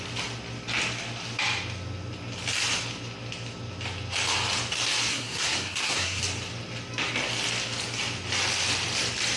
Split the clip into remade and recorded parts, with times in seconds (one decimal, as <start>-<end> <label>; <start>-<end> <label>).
0.0-5.1 recorded; 5.1-6.2 remade; 6.2-9.4 recorded

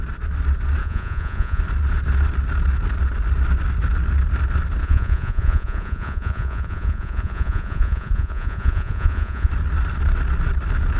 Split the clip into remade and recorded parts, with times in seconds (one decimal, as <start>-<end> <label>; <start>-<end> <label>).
0.0-0.8 recorded; 0.8-1.6 remade; 1.6-4.8 recorded; 4.8-9.5 remade; 9.5-11.0 recorded